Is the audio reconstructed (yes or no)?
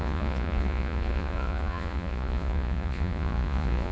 yes